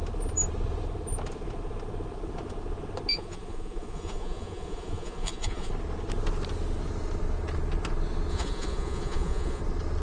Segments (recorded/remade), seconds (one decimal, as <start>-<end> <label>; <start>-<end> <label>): 0.0-3.1 recorded; 3.1-5.7 remade; 5.7-8.3 recorded; 8.3-9.6 remade; 9.6-10.0 recorded